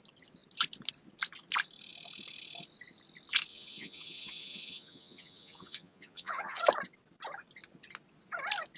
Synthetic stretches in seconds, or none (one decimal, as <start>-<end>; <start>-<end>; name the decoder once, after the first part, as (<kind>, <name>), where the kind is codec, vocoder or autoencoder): 3.5-6.6 (vocoder, Vocos)